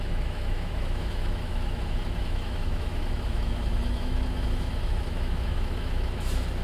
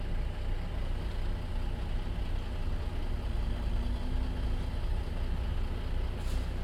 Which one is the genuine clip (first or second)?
second